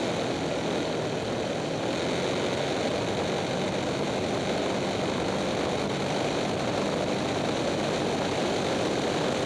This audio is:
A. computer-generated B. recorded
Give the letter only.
B